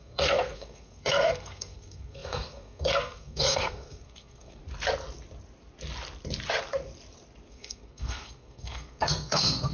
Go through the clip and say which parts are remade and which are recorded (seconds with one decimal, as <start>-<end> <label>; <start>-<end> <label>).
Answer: 0.0-4.6 remade; 4.6-7.5 recorded; 7.5-9.7 remade